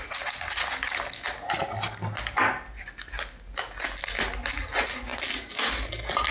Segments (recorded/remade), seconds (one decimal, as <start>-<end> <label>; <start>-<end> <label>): 0.0-6.3 recorded